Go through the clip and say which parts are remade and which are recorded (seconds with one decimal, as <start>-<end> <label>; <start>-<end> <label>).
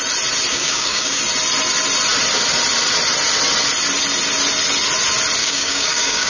0.0-0.5 recorded; 0.5-1.2 remade; 1.2-5.4 recorded; 5.4-6.3 remade